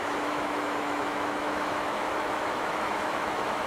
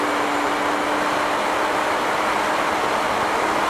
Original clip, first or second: second